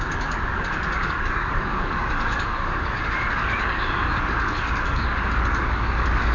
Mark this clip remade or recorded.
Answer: remade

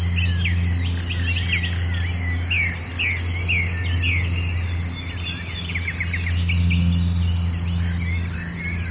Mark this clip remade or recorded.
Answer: recorded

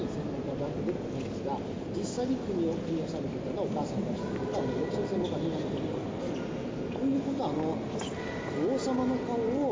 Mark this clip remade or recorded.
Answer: recorded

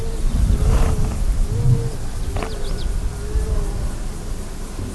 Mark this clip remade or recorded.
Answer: recorded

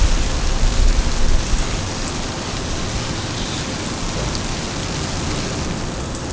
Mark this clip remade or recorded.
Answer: recorded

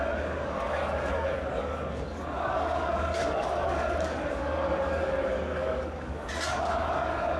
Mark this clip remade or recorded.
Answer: remade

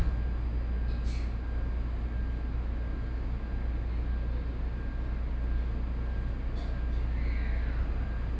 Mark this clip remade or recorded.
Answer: recorded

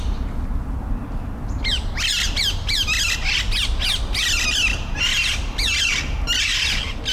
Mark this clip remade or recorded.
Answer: recorded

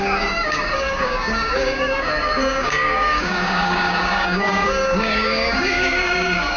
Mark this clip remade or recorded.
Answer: remade